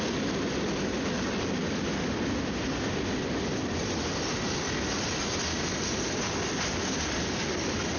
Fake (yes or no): no